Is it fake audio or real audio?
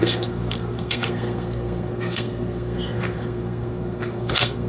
fake